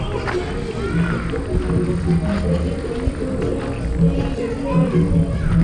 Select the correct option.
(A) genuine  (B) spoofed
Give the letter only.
A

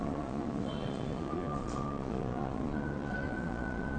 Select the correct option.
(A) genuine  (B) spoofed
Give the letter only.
B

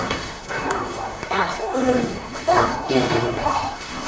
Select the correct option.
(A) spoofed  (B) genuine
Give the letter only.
A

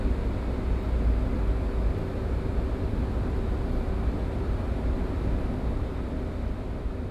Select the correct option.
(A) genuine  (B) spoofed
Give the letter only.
A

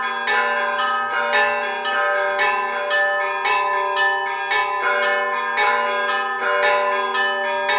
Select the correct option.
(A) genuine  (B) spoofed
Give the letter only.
A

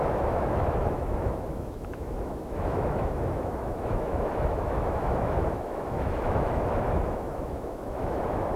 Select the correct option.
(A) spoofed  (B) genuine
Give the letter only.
A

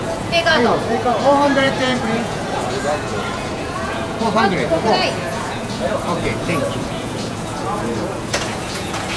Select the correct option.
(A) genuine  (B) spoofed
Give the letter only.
B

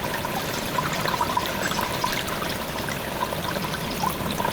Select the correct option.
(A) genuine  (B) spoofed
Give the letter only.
B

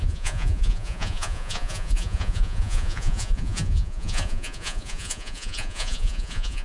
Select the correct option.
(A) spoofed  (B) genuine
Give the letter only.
A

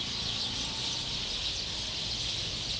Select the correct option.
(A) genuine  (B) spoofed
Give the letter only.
A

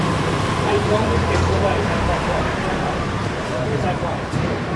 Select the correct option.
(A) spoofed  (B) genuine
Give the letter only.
A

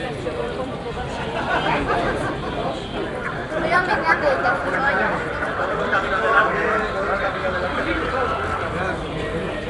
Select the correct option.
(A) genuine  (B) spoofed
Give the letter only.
B